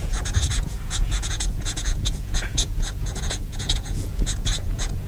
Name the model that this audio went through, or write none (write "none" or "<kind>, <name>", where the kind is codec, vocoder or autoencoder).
vocoder, Vocos